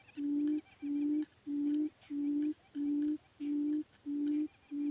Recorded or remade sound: recorded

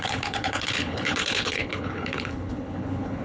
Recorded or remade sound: remade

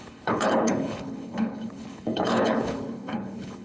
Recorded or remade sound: remade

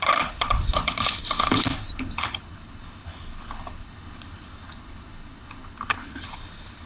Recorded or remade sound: remade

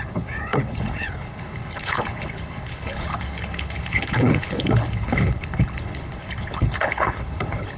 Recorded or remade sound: remade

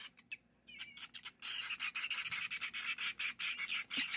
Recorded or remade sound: recorded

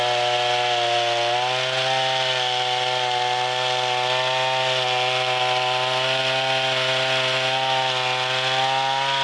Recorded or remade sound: recorded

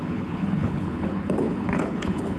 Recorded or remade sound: remade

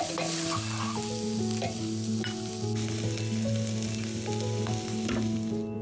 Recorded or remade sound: recorded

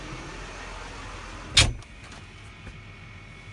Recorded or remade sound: recorded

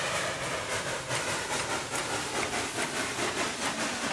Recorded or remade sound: recorded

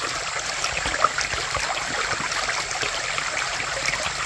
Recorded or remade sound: recorded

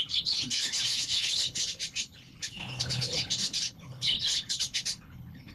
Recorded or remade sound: remade